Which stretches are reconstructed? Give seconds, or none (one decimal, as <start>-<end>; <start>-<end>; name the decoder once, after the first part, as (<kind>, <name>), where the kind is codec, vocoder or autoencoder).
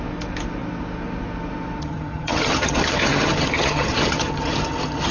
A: 1.8-5.1 (vocoder, HiFi-GAN)